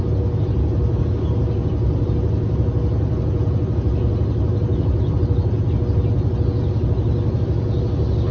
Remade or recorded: recorded